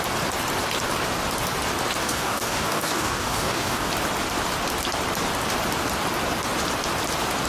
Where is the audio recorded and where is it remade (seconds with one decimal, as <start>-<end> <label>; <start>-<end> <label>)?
0.0-2.0 recorded; 2.0-3.9 remade; 3.9-7.5 recorded